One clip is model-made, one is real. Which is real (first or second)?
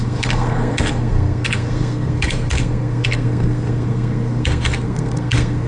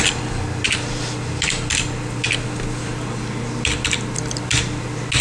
second